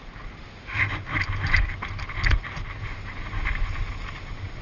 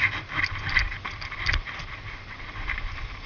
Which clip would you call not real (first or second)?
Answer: second